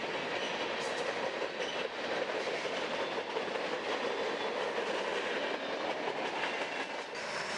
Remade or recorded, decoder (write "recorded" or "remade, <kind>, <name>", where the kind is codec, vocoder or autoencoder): recorded